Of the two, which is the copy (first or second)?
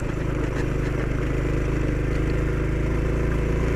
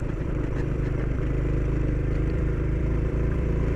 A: second